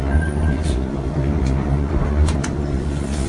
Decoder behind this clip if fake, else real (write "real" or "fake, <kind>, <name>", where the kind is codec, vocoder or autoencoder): fake, vocoder, Vocos